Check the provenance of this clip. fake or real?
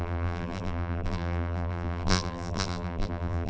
fake